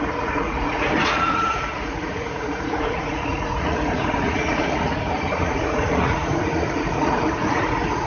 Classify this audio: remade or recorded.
remade